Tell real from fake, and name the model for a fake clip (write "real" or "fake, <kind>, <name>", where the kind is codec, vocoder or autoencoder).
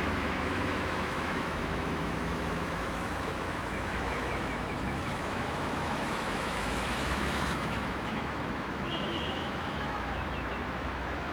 fake, autoencoder, DAC-VAE